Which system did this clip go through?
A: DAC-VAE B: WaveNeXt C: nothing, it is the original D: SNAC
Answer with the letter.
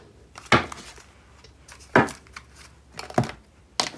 C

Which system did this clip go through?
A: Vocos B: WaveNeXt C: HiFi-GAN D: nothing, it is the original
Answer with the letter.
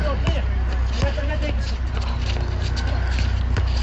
D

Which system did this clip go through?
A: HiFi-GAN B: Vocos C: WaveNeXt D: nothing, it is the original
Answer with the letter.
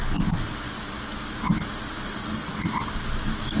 D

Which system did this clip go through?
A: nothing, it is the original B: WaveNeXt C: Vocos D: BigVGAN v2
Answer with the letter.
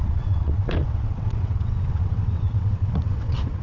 B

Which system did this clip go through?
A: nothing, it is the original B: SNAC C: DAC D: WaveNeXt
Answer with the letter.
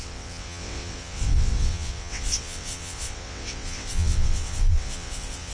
D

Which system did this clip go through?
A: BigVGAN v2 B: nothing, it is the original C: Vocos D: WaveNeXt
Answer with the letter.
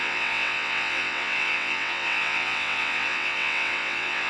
D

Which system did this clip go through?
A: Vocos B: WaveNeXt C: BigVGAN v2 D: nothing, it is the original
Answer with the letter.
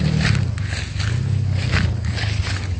D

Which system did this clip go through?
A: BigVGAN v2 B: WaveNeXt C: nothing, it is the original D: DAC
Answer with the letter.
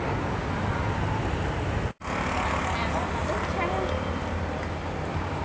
C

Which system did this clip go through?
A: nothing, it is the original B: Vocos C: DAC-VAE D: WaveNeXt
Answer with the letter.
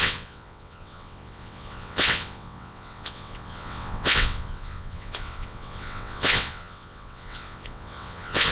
D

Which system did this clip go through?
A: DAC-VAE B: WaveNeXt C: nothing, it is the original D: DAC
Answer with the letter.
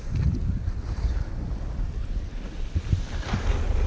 C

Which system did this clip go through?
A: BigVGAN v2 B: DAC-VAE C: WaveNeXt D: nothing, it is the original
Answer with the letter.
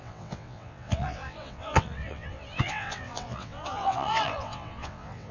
C